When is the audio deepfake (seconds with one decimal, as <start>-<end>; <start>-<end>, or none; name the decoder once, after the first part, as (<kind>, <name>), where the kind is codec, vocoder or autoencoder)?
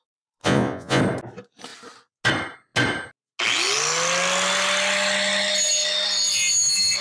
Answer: 0.4-1.0 (vocoder, Vocos)